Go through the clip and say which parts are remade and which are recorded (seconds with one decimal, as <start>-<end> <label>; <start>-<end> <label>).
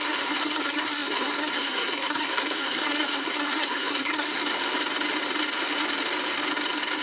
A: 0.0-4.4 remade; 4.4-7.0 recorded